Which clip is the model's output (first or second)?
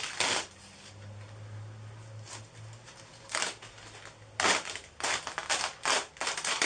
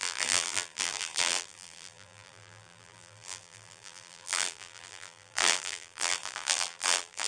second